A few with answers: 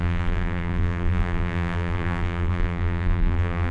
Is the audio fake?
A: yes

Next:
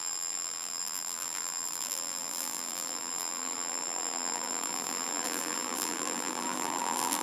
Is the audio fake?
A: yes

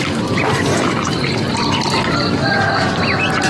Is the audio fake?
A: no